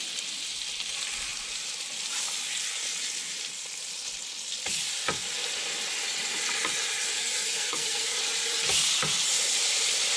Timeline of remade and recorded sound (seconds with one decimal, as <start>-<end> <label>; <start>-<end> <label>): 0.0-7.1 recorded; 7.1-8.2 remade; 8.2-10.2 recorded